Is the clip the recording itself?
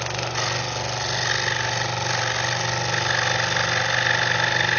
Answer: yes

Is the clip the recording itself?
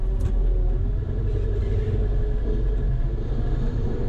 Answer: yes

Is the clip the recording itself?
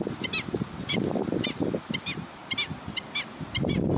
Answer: yes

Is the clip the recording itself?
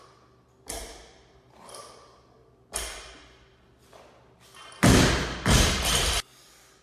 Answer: yes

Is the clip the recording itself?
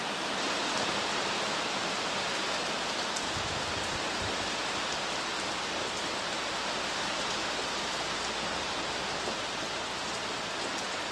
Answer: yes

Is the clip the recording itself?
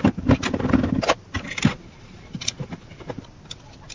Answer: yes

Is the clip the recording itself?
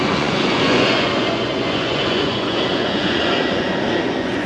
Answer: no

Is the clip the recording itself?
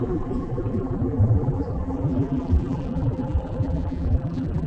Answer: no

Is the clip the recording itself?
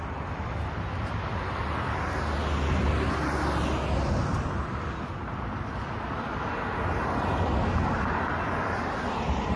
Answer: yes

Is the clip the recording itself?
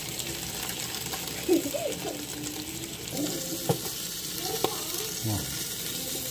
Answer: yes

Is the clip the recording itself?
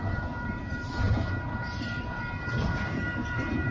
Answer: no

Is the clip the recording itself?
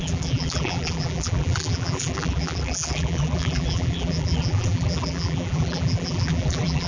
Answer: no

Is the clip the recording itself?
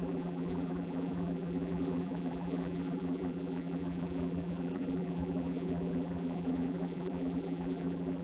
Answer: no